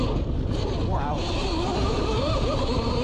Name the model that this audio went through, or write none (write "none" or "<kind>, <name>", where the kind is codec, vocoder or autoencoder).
none